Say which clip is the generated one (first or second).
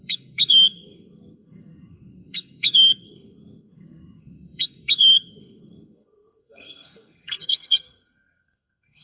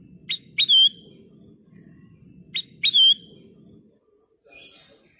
first